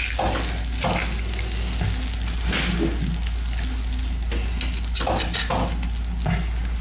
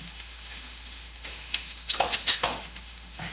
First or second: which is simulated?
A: second